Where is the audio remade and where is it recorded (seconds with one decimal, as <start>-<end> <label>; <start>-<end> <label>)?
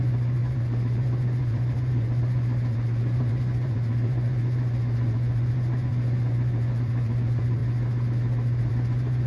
0.0-7.6 remade; 7.6-8.7 recorded; 8.7-9.3 remade